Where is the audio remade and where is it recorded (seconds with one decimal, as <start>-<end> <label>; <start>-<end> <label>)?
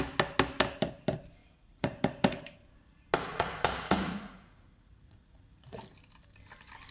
0.0-1.4 recorded; 1.4-2.4 remade; 2.4-3.3 recorded; 3.3-5.8 remade; 5.8-6.9 recorded